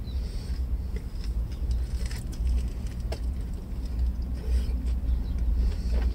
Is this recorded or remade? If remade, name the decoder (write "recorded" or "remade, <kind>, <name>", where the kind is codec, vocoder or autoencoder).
recorded